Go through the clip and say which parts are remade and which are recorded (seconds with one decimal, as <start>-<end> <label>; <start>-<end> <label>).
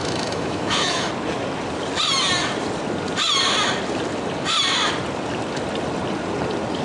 0.0-1.1 remade; 1.1-6.8 recorded